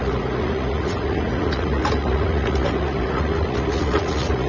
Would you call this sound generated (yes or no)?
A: yes